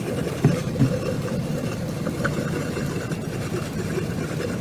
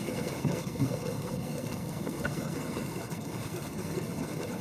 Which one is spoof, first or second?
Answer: second